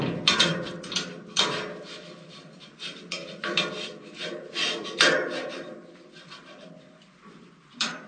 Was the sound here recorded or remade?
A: remade